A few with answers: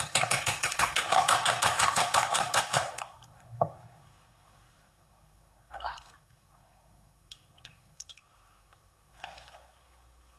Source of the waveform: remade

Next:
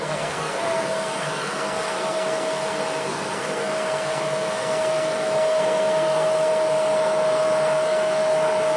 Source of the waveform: remade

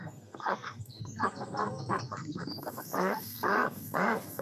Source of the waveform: remade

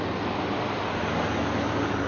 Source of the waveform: recorded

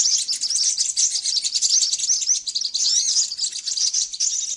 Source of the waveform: recorded